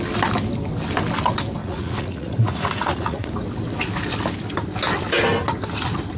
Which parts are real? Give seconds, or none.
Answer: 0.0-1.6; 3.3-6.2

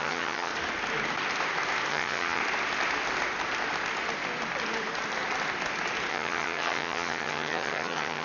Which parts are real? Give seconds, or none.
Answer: 0.5-1.9; 2.4-6.1

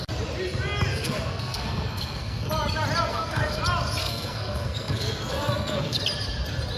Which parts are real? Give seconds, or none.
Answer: 0.0-0.9; 2.5-3.1; 3.6-4.0; 6.0-6.8

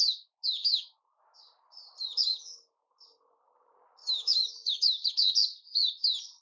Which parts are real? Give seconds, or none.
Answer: 0.0-0.6; 1.4-4.0; 5.1-6.4

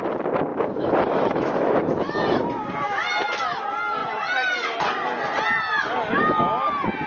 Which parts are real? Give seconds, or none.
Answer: 0.0-0.5; 2.4-7.1

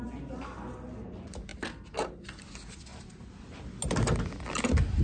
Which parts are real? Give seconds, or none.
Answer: 0.0-2.9; 3.6-5.0

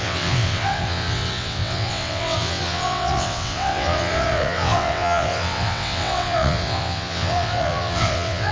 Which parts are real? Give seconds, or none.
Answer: none

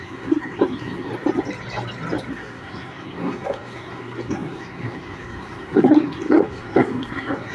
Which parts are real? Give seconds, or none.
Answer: 1.1-2.3